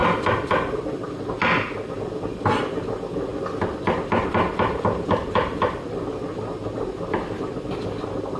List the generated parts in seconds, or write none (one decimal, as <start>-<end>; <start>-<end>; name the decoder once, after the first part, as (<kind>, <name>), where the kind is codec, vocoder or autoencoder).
none